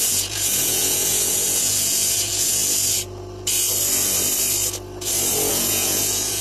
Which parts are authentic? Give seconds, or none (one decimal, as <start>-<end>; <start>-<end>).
2.6-5.5